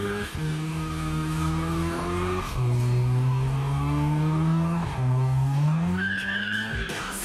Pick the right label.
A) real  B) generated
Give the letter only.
B